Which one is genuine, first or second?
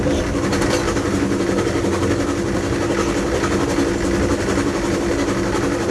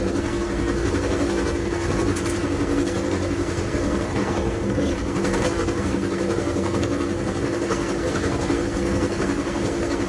first